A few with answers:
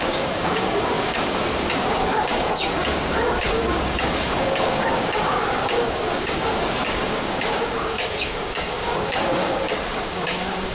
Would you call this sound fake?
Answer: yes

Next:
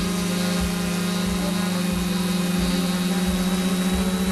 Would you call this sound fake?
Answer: no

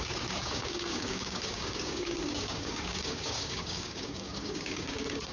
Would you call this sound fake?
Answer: yes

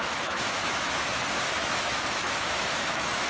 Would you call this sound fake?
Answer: yes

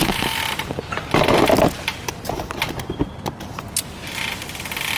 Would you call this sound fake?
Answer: no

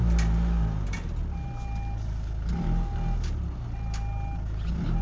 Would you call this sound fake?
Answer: no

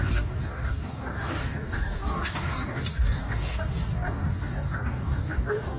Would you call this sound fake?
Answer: yes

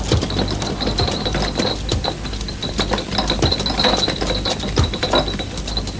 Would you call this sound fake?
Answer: no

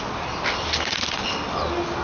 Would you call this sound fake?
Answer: no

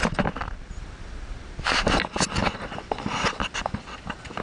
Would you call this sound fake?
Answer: no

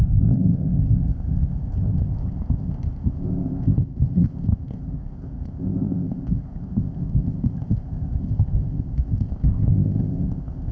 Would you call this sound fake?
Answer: yes